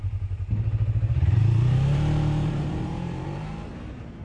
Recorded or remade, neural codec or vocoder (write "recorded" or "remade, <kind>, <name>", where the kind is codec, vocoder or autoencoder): remade, vocoder, BigVGAN v2